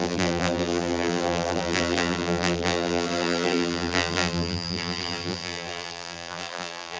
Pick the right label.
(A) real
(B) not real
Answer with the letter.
B